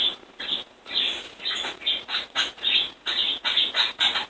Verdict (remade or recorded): remade